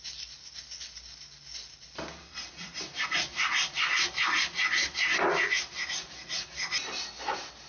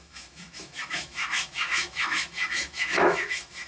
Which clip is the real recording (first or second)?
first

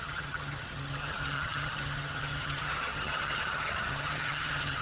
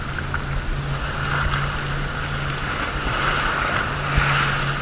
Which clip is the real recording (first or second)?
second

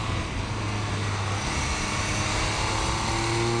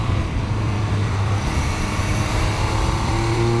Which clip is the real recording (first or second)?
first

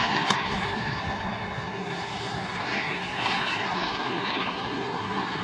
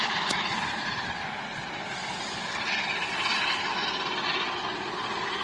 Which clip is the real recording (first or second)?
second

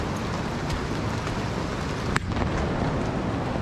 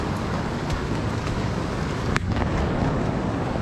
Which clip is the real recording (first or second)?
first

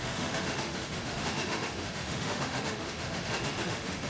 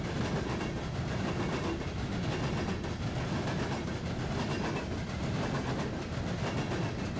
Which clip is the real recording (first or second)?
second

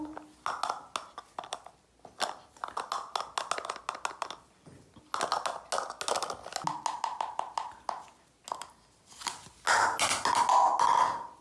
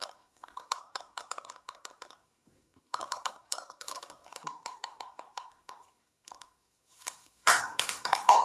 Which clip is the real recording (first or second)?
first